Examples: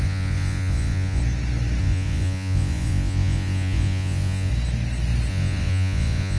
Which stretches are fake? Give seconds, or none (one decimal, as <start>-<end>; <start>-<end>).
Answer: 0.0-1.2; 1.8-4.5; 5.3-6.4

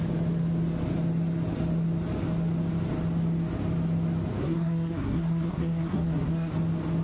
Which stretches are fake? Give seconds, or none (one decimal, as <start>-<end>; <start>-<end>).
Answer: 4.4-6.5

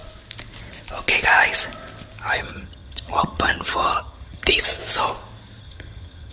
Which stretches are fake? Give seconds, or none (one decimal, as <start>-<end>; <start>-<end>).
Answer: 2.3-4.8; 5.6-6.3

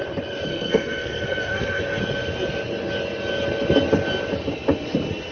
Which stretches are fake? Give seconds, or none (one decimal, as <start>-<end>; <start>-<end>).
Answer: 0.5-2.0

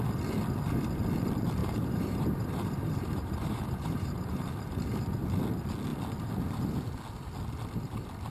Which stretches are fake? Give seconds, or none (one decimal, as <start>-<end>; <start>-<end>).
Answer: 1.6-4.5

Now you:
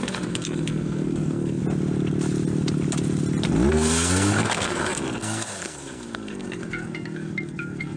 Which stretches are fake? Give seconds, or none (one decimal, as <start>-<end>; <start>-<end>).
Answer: 0.0-1.6; 3.7-8.0

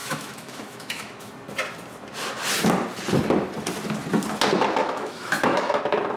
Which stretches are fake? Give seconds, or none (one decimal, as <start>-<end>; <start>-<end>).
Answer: 0.0-1.3; 4.8-5.8